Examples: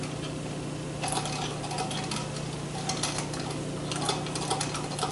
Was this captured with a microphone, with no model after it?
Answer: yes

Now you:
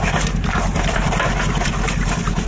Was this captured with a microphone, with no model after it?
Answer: yes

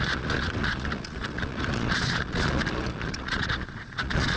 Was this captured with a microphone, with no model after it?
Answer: no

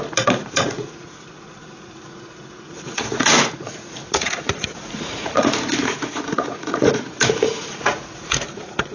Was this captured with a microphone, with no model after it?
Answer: no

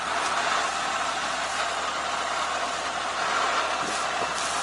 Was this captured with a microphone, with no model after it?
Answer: yes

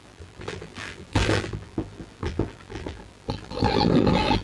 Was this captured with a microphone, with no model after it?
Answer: no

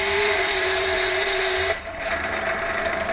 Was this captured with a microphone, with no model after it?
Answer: no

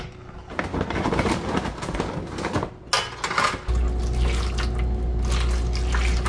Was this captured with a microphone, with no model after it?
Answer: yes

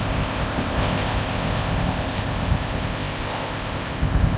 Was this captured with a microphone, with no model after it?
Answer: no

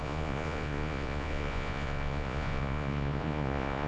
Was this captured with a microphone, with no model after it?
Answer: no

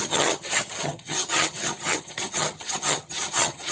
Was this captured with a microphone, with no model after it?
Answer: no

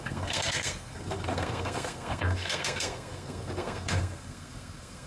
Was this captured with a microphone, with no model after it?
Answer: no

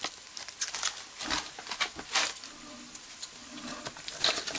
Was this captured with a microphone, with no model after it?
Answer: yes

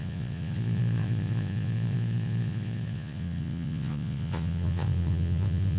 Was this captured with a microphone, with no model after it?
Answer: no